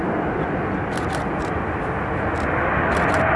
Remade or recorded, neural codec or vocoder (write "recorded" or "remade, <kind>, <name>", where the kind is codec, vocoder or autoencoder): recorded